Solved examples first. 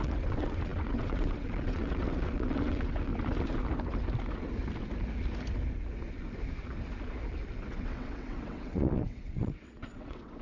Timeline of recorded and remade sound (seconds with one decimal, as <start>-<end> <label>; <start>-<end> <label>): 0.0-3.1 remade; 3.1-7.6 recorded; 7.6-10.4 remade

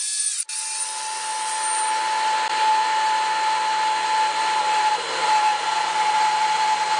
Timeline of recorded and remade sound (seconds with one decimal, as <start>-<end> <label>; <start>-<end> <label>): 0.0-7.0 recorded

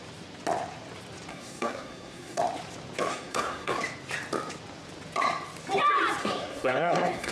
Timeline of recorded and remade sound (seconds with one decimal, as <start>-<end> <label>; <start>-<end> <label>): 0.0-1.3 recorded; 1.3-2.4 remade; 2.4-3.1 recorded; 3.1-3.8 remade; 3.8-6.2 recorded; 6.2-7.3 remade

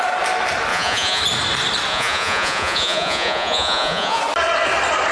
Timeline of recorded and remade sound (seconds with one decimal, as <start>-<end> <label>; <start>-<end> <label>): 0.0-0.7 recorded; 0.7-1.2 remade; 1.2-1.9 recorded; 1.9-4.2 remade; 4.2-5.1 recorded

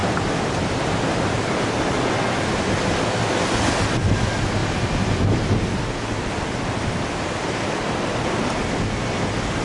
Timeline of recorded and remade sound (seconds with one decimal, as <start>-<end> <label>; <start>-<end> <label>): 0.0-2.1 remade; 2.1-9.6 recorded

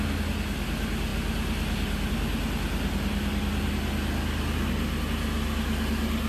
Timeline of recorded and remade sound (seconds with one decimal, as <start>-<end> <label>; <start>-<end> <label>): 0.0-6.3 recorded

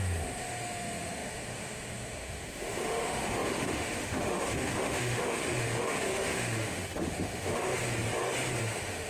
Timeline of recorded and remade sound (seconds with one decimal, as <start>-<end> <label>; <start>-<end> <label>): 0.0-7.7 remade; 7.7-8.6 recorded; 8.6-9.1 remade